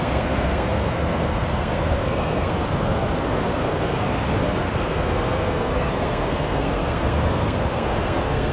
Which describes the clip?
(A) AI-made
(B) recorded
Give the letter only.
A